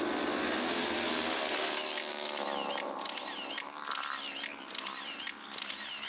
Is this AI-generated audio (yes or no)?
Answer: no